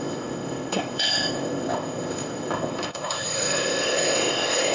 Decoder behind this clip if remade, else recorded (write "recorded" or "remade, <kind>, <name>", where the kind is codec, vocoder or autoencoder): remade, codec, ZipCodec